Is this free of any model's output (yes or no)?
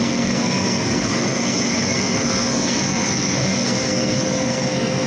no